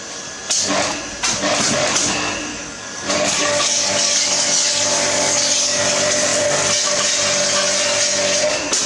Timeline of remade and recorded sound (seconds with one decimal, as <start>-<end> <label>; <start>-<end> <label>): 0.0-2.5 recorded; 2.5-5.8 remade; 5.8-8.9 recorded